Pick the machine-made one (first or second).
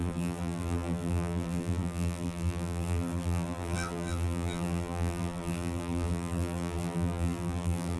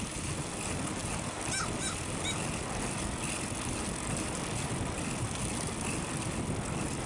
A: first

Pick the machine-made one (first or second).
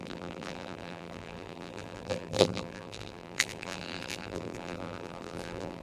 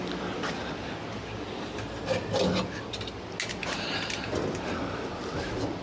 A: first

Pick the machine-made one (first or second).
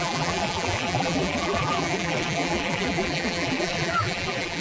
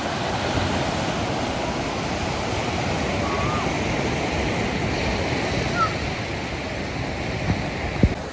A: first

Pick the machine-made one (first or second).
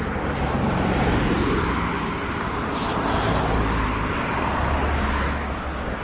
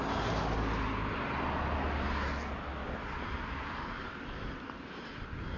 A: first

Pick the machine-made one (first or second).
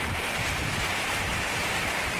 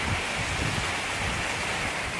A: first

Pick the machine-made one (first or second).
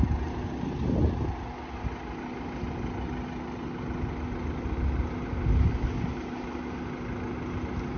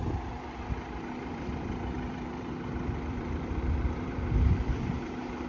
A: second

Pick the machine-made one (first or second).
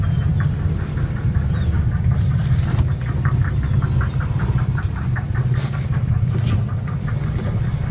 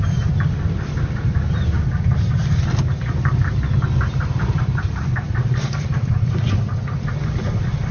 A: second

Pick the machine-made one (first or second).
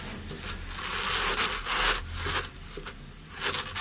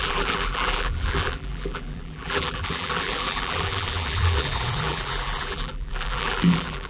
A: second